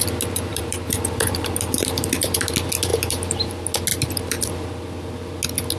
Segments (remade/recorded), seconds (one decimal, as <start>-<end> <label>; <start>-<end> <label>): 0.0-0.5 recorded; 0.5-2.5 remade; 2.5-2.9 recorded; 2.9-3.5 remade; 3.5-3.9 recorded; 3.9-4.5 remade; 4.5-5.8 recorded